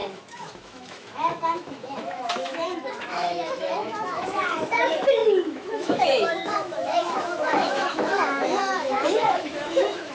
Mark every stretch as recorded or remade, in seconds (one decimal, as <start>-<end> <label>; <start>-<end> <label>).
0.0-10.1 remade